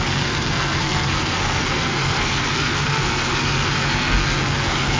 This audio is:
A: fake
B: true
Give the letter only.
A